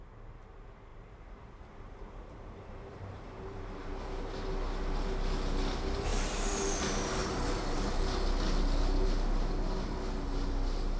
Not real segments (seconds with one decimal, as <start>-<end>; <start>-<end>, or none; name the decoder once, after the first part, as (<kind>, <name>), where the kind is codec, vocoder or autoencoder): 0.9-3.9 (vocoder, BigVGAN v2); 7.2-8.0